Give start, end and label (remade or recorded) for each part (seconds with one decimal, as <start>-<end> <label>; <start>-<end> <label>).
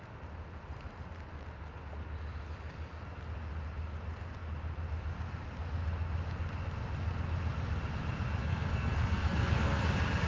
0.0-8.4 recorded; 8.4-9.8 remade; 9.8-10.3 recorded